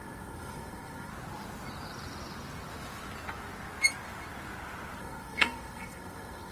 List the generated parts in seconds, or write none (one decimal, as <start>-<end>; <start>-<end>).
0.0-1.1; 5.0-6.5